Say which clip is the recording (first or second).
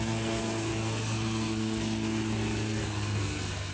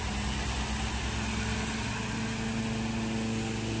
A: second